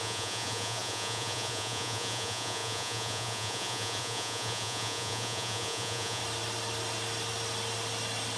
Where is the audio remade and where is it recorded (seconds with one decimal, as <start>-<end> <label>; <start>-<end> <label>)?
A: 0.0-6.2 remade; 6.2-8.4 recorded